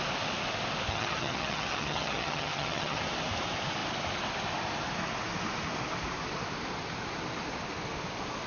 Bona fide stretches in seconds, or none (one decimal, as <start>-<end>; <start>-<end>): 0.0-0.9; 3.0-8.5